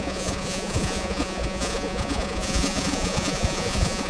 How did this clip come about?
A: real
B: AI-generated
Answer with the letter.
B